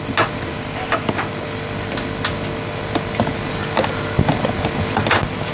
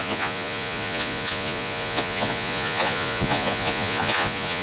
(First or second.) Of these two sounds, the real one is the first